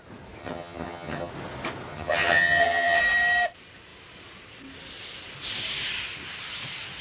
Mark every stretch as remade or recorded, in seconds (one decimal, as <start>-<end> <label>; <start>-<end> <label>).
0.0-0.4 recorded; 0.4-1.3 remade; 1.3-1.9 recorded; 1.9-3.0 remade; 3.0-7.0 recorded